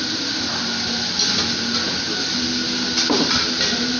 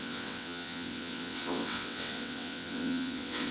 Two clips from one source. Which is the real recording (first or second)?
first